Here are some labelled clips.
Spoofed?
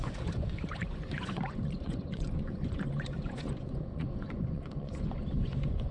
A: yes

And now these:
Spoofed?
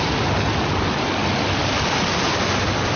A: no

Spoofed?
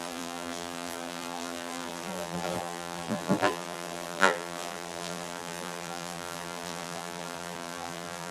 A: yes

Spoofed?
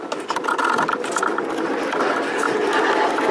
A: no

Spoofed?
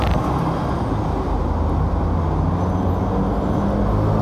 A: no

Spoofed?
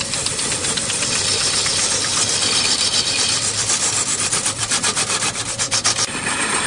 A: yes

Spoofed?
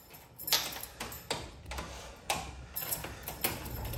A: no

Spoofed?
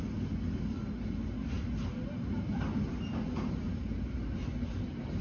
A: no